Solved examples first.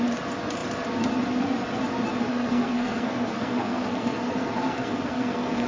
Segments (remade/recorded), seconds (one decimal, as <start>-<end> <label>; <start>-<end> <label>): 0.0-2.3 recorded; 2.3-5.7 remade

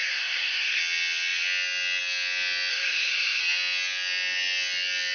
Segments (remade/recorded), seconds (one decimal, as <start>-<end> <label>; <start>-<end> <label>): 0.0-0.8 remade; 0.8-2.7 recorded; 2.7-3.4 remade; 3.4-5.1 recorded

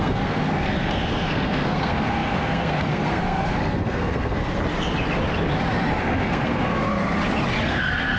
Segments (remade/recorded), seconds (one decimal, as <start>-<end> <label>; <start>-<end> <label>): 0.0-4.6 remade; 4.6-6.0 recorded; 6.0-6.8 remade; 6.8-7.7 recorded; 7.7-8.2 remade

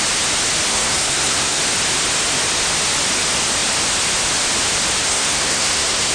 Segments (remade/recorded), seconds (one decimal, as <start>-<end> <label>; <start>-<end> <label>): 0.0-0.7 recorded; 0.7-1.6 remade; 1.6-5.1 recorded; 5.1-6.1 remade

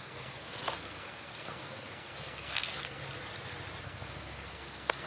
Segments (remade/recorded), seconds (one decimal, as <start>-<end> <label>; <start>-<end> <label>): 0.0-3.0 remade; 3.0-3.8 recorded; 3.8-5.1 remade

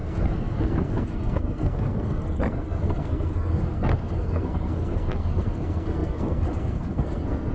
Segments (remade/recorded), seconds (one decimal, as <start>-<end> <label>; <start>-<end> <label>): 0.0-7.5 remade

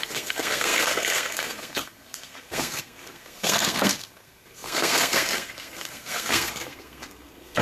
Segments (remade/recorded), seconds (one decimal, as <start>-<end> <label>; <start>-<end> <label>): 0.0-7.6 remade